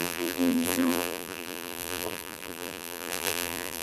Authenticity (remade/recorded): remade